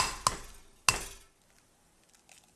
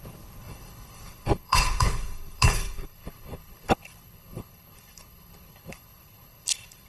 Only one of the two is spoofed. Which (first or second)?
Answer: second